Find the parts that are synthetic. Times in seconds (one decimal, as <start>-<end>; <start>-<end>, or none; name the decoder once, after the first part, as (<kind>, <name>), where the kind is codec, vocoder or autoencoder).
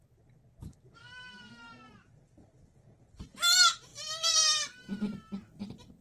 none